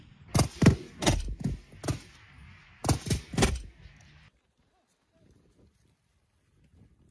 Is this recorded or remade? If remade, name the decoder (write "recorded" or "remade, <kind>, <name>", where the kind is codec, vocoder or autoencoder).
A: recorded